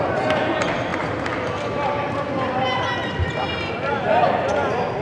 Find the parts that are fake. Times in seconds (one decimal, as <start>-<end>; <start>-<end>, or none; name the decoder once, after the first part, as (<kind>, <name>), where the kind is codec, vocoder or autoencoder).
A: none